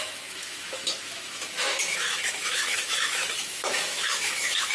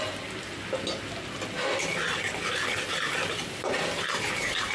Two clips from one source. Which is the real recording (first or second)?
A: second